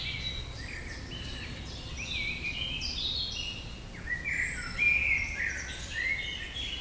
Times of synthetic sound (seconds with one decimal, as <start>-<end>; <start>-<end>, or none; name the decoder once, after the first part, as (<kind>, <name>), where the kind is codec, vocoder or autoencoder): none

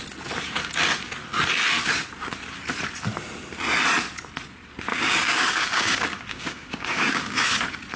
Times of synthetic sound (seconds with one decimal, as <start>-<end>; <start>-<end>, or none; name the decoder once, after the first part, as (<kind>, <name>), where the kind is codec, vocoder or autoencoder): 4.9-7.6 (codec, DAC)

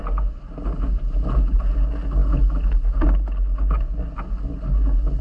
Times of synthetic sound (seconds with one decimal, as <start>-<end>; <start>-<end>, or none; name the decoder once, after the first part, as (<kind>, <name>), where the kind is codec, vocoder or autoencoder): none

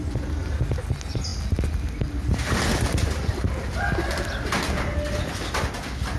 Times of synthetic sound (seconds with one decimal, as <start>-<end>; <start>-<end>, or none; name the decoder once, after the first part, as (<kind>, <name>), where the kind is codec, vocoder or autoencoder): none